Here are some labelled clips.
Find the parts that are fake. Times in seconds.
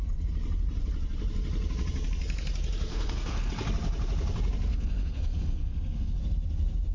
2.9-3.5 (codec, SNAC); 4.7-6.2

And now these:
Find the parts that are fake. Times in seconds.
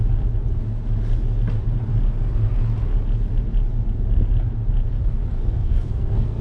5.4-6.4 (codec, SNAC)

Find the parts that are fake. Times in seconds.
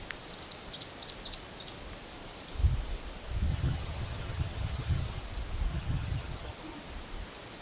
3.5-5.2 (vocoder, HiFi-GAN); 5.7-6.5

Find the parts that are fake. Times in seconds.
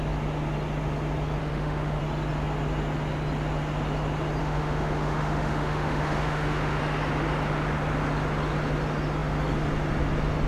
1.4-2.0 (autoencoder, DAC-VAE); 4.4-6.8